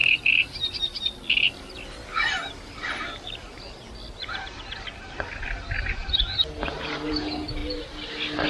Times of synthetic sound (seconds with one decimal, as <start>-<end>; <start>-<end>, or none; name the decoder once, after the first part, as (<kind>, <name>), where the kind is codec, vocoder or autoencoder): none